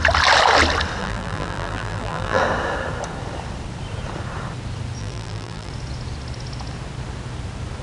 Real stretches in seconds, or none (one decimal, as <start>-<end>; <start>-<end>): 0.0-1.0; 2.4-5.0; 5.7-7.8